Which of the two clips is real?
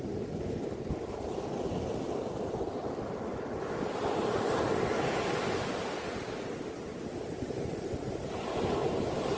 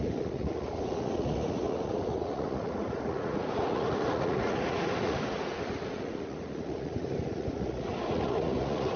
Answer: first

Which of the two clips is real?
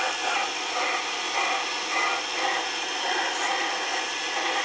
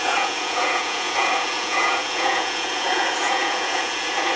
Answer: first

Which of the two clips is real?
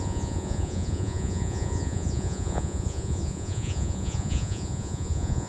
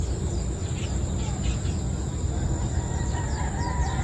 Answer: second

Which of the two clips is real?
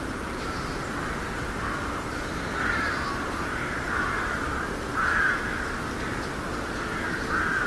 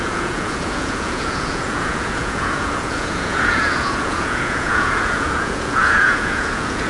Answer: first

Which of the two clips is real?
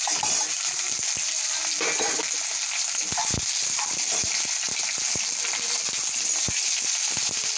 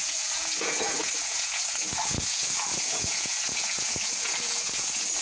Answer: first